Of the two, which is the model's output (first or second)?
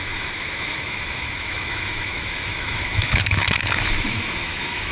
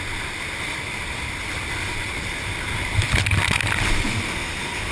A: first